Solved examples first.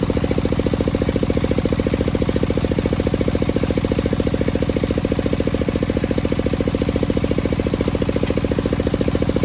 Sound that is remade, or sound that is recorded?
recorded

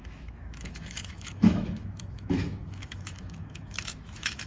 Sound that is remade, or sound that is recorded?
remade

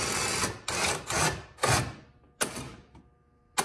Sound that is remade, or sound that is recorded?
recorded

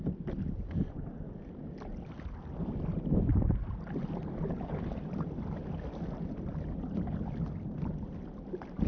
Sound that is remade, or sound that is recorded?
recorded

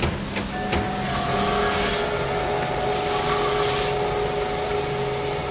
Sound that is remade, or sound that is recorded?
recorded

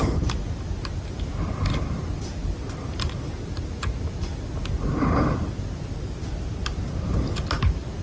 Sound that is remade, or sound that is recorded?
recorded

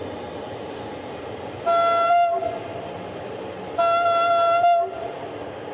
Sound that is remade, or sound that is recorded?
recorded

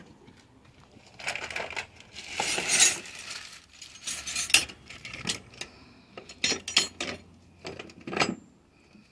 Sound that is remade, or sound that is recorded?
recorded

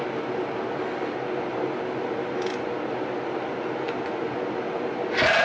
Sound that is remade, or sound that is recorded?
recorded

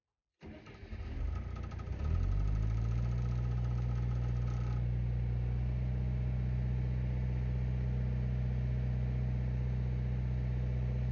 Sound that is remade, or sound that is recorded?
recorded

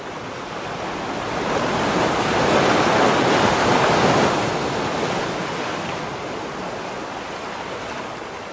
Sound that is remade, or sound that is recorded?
recorded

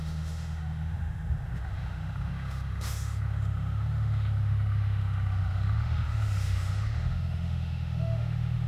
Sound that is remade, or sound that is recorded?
remade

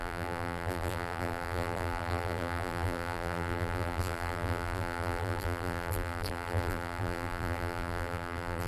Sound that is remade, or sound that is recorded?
remade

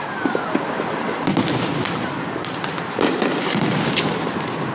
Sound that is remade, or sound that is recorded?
recorded